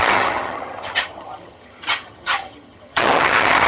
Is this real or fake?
fake